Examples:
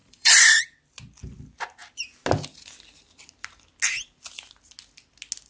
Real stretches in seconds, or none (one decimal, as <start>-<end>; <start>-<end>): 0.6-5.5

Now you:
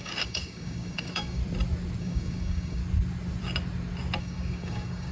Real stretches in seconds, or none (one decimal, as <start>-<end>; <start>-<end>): 1.4-2.0; 2.8-4.2

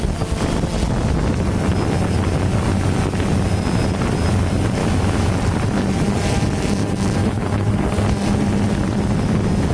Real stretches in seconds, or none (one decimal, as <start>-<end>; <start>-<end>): 0.0-4.8; 5.3-7.2; 7.7-9.7